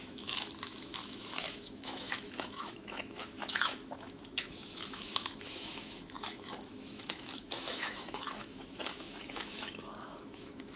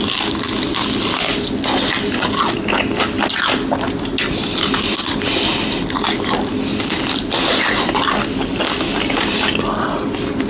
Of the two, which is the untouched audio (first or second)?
second